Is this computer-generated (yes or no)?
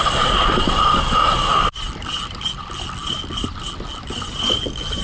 no